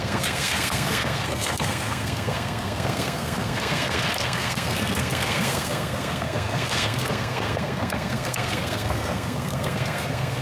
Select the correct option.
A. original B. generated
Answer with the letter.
B